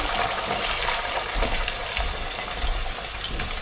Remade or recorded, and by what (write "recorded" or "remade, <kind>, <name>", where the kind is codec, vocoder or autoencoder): recorded